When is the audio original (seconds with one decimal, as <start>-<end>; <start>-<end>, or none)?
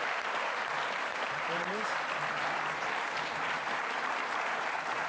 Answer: 1.7-2.4